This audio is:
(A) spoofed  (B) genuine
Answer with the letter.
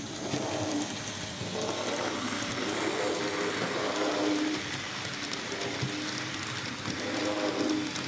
B